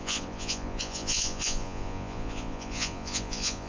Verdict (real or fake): fake